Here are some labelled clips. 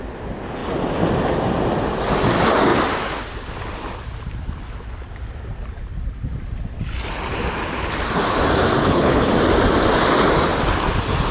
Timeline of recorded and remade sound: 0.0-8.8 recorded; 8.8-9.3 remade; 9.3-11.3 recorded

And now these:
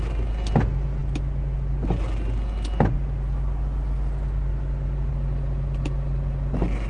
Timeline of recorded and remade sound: 0.0-6.9 recorded

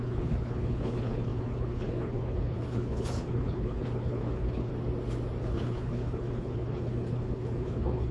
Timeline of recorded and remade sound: 0.0-4.7 remade; 4.7-5.4 recorded; 5.4-8.1 remade

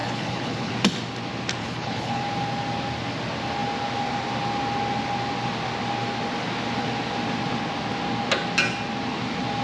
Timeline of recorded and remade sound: 0.0-0.7 remade; 0.7-1.6 recorded; 1.6-2.2 remade; 2.2-9.6 recorded

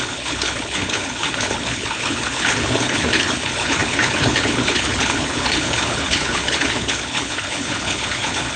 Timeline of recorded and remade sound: 0.0-8.6 remade

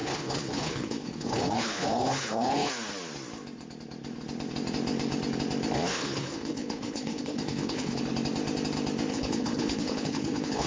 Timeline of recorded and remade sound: 0.0-2.7 remade; 2.7-5.9 recorded; 5.9-8.0 remade; 8.0-9.1 recorded; 9.1-10.7 remade

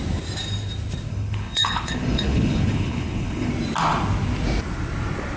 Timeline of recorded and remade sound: 0.0-1.1 recorded; 1.1-3.5 remade; 3.5-5.4 recorded